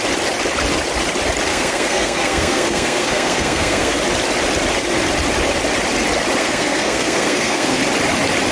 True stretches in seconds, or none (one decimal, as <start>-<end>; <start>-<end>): 0.0-1.5; 4.0-6.4; 7.8-8.5